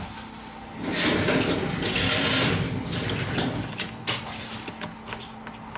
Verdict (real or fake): real